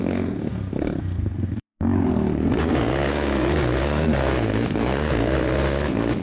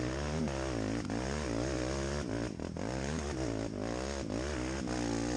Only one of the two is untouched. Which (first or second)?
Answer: second